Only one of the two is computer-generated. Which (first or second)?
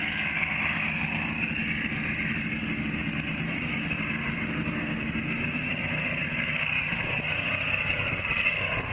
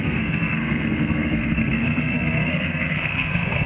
second